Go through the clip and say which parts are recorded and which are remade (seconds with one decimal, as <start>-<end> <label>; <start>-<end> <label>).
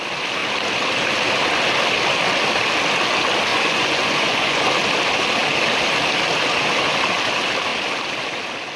0.0-3.5 recorded; 3.5-4.7 remade; 4.7-8.8 recorded